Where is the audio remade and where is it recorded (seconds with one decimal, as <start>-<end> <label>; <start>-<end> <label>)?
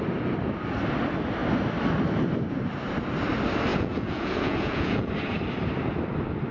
0.0-3.7 recorded; 3.7-5.1 remade; 5.1-6.5 recorded